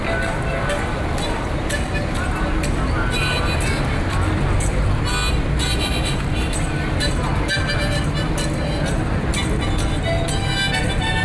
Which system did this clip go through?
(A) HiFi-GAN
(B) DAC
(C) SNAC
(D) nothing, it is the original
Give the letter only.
D